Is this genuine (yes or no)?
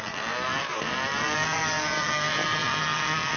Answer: yes